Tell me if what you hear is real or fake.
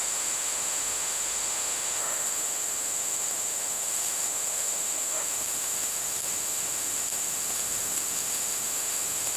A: fake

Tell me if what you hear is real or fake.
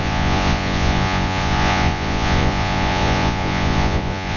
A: fake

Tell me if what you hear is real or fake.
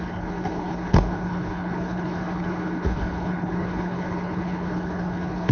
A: fake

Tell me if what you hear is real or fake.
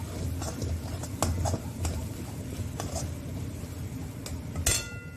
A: real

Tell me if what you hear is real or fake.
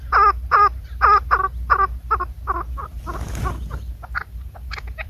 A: real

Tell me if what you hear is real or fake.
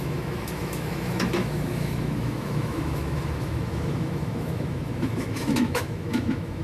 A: fake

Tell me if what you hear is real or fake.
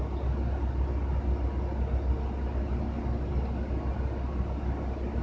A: real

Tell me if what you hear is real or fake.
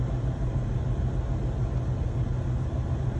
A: real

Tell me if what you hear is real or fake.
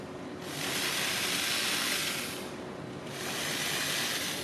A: real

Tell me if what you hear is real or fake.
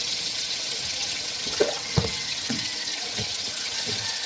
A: fake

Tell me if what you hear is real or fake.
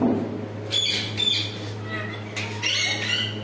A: real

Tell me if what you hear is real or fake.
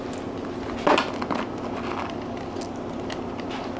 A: real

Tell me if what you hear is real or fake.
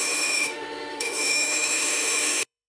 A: fake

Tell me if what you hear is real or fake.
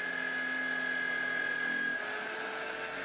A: real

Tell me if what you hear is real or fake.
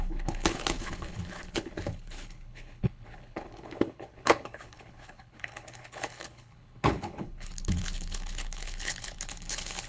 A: fake